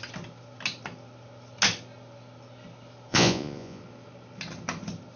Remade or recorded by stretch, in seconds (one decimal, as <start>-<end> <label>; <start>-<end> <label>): 0.0-3.1 recorded; 3.1-3.8 remade; 3.8-5.2 recorded